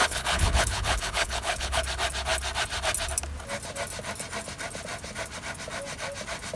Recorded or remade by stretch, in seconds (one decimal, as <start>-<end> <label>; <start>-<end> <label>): 0.0-1.8 remade; 1.8-6.6 recorded